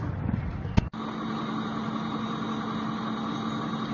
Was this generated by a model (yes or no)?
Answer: no